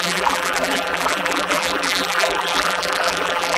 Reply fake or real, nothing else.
fake